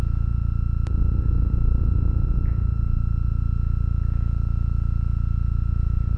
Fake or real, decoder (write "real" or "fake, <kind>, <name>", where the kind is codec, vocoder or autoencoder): real